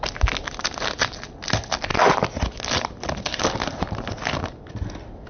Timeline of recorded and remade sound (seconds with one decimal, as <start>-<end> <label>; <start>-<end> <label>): 0.0-5.3 recorded